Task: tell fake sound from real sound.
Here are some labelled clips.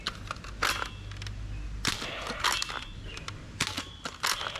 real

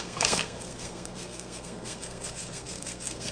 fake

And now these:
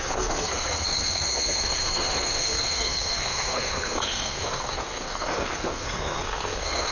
fake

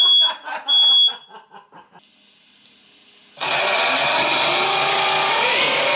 real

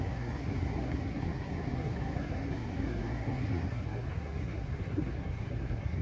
fake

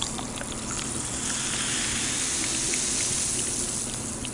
real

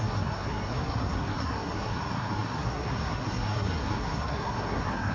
fake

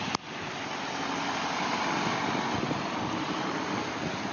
real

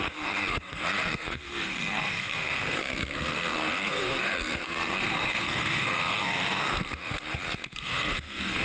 fake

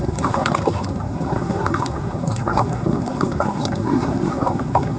fake